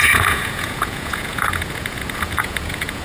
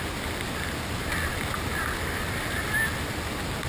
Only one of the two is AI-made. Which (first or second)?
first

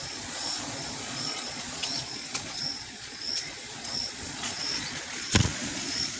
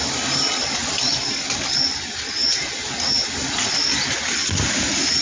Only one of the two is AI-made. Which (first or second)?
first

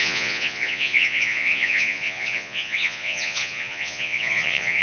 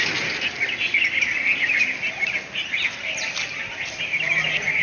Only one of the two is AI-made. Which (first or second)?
first